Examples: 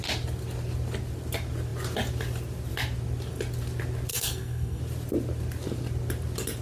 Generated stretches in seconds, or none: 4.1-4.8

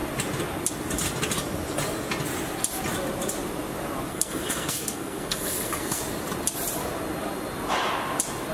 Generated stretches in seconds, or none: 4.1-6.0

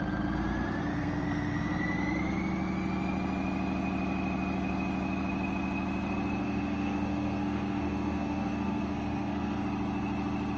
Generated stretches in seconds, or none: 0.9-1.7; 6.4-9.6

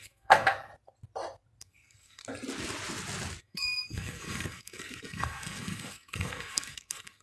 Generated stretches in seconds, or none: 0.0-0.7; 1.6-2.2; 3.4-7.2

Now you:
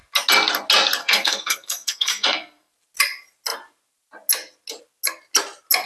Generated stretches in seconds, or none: 1.0-2.7

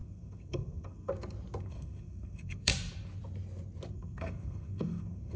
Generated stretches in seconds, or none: 0.0-1.1; 1.6-2.7; 3.9-5.4

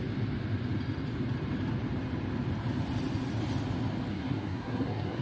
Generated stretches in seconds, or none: 4.1-5.2